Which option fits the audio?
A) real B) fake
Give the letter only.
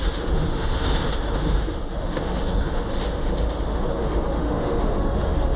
B